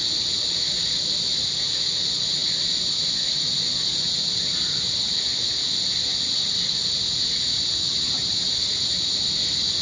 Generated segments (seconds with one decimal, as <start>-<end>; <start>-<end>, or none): none